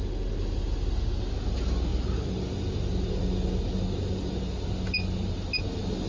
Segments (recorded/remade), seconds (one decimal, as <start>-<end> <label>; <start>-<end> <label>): 0.0-6.1 recorded